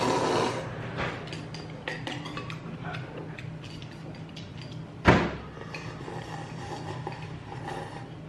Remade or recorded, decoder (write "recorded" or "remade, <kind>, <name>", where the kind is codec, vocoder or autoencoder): recorded